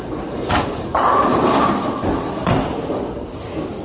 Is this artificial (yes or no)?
no